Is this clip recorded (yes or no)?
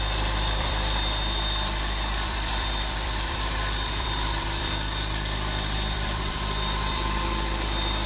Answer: no